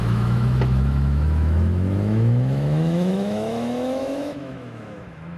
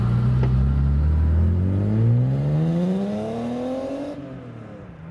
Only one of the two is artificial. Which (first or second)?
first